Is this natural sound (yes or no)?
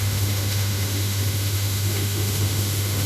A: no